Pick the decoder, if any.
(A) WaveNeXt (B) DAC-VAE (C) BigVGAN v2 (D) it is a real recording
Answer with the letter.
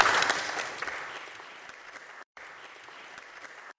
C